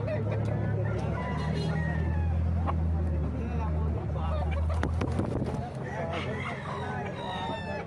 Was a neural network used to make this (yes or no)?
no